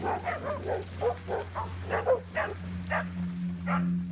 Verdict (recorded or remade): recorded